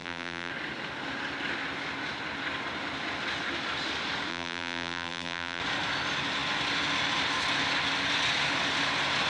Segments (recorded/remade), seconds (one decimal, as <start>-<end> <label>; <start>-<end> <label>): 0.0-0.5 remade; 0.5-4.3 recorded; 4.3-5.6 remade; 5.6-9.3 recorded